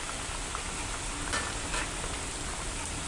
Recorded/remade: recorded